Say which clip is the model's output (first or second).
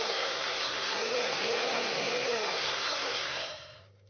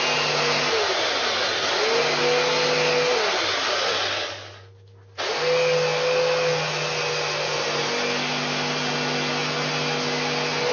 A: first